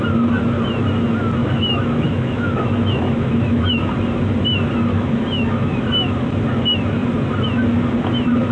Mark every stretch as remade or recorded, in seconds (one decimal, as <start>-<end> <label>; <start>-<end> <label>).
0.0-1.4 recorded; 1.4-3.9 remade; 3.9-4.9 recorded; 4.9-5.8 remade; 5.8-8.5 recorded